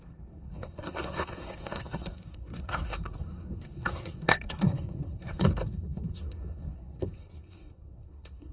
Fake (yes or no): yes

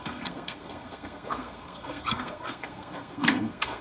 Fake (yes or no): yes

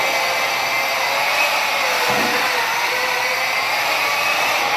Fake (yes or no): no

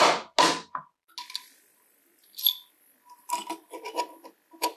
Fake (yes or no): no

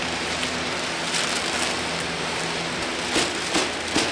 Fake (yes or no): no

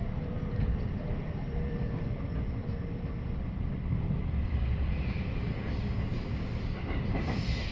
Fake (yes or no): yes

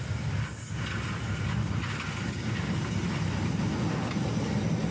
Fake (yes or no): no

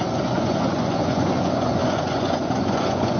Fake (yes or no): yes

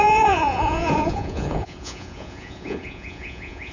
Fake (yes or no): yes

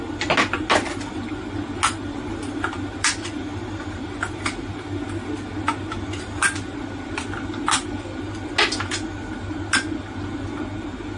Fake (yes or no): no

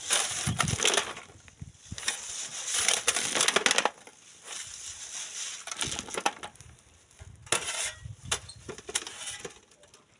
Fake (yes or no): no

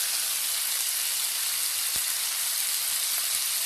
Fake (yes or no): no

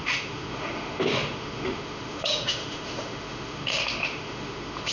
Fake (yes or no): yes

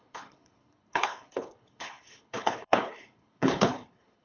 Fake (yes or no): yes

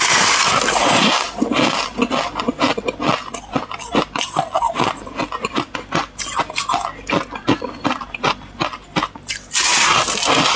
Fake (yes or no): no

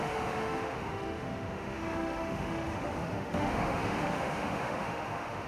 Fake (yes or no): yes